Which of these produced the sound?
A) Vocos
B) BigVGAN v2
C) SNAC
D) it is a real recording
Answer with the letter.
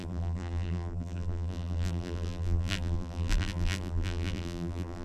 B